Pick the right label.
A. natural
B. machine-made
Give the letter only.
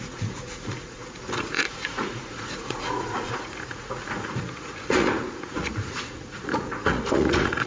B